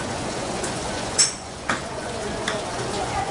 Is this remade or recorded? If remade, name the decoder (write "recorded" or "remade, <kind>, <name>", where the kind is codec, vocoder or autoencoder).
remade, vocoder, Vocos